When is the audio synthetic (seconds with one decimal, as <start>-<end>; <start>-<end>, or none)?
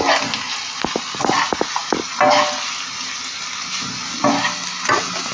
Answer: none